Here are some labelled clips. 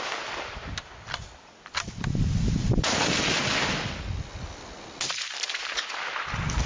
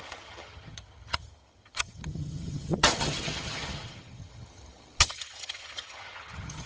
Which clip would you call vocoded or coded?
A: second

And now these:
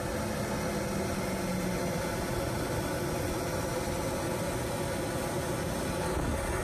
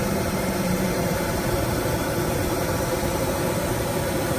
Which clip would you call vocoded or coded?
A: second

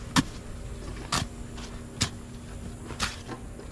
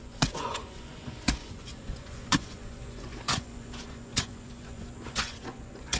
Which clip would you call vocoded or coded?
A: second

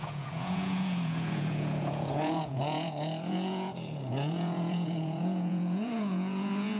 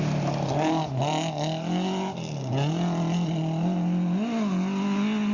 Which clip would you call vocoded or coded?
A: first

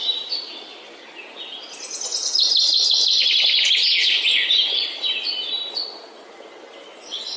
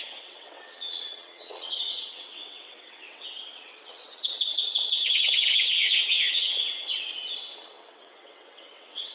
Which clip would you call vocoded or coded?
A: second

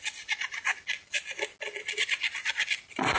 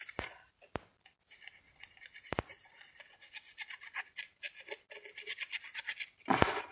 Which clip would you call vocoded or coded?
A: second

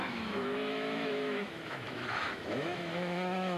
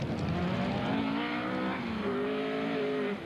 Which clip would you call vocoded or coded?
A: first